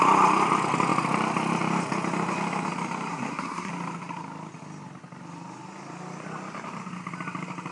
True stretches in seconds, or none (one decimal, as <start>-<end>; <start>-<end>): 0.0-3.1; 3.7-7.7